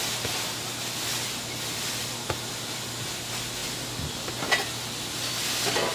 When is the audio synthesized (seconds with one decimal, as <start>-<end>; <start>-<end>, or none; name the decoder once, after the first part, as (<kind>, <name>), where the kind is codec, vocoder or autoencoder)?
none